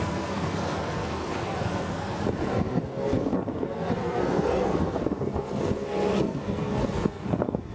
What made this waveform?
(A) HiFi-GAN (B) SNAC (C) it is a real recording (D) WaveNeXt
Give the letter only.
B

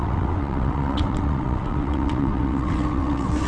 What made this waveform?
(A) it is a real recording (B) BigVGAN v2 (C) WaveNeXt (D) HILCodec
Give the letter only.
C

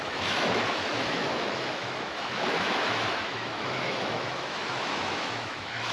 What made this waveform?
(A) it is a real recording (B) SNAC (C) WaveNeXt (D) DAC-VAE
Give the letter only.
D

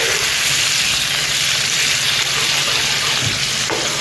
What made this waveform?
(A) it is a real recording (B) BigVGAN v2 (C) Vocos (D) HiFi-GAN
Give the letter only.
B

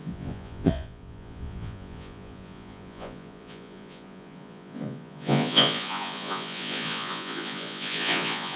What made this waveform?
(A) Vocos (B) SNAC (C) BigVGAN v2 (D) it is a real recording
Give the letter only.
A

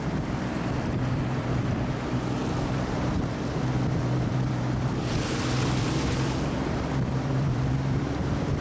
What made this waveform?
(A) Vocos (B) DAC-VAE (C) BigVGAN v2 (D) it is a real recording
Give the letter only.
C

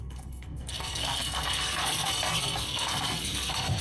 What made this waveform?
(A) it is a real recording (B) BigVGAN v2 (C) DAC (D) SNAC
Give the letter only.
D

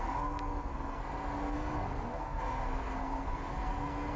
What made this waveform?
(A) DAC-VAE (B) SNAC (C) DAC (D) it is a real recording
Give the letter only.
B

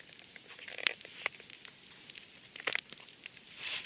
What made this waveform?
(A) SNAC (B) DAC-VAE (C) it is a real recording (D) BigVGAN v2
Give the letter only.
D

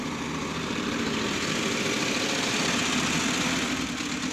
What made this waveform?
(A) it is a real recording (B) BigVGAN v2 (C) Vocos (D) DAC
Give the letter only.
B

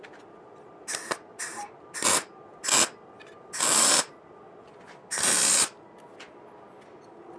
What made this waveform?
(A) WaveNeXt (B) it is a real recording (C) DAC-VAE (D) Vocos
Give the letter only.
B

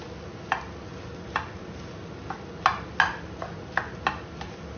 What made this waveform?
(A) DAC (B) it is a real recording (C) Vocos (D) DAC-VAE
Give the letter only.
B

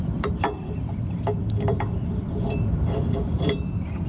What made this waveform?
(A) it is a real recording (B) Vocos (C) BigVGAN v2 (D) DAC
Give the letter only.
C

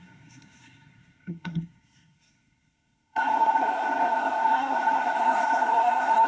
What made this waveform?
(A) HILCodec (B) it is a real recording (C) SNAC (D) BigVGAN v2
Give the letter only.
C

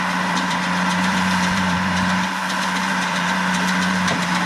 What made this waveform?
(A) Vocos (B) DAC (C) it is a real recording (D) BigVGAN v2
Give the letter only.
D